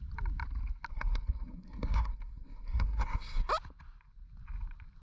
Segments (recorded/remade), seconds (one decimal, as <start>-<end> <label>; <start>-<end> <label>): 0.0-0.9 recorded; 0.9-3.5 remade; 3.5-5.0 recorded